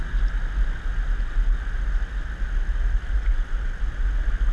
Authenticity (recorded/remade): recorded